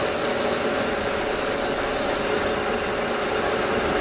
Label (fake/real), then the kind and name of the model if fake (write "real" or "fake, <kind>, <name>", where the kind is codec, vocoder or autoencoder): real